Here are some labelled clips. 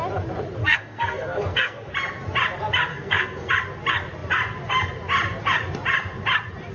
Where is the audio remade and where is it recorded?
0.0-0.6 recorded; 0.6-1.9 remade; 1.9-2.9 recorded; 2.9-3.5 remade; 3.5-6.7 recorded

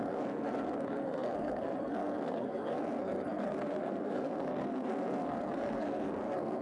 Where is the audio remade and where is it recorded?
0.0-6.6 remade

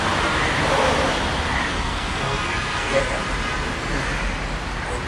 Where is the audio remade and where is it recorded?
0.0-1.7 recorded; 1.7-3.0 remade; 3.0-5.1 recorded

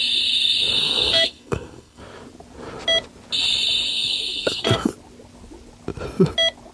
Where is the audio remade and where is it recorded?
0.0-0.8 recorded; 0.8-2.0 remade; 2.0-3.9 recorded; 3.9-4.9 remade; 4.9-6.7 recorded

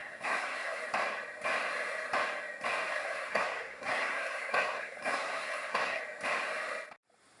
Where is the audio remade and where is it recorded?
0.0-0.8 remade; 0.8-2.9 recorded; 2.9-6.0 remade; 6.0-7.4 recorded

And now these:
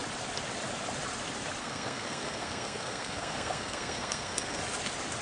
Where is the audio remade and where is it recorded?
0.0-1.6 recorded; 1.6-4.6 remade; 4.6-5.2 recorded

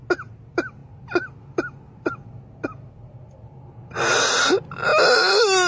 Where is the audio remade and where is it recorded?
0.0-5.7 recorded